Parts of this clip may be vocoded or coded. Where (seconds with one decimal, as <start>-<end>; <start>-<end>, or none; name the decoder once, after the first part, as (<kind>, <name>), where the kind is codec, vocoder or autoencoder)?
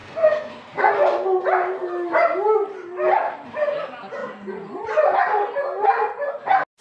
0.0-0.9 (codec, SNAC)